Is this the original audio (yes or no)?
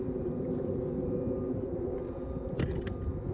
yes